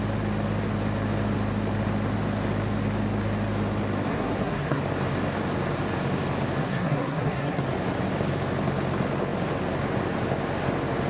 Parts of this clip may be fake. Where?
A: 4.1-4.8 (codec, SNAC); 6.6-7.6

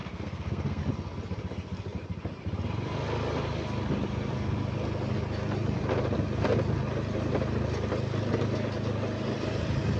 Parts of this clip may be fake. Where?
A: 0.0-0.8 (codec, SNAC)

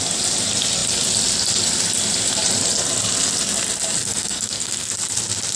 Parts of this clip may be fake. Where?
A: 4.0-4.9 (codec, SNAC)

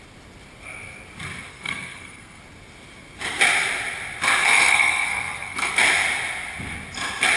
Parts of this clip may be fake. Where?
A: 1.5-2.4 (codec, SNAC); 4.4-5.7

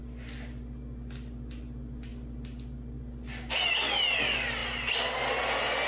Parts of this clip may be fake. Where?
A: none

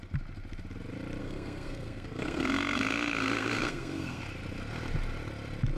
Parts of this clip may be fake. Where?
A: 1.2-4.2 (codec, SNAC)